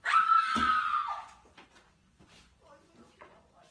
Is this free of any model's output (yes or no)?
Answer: no